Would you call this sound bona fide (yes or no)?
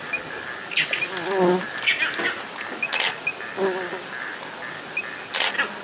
yes